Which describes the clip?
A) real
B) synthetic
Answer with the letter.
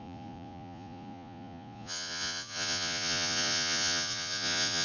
B